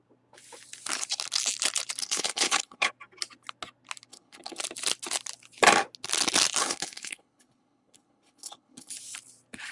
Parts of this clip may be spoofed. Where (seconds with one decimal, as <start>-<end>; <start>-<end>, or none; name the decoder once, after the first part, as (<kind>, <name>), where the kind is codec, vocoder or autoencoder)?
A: 2.0-2.9 (codec, HILCodec); 4.1-4.6; 6.6-8.9